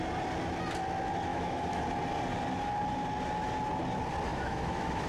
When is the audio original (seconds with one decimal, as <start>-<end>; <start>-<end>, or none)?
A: 0.0-1.3; 1.8-4.3